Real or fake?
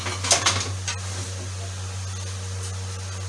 real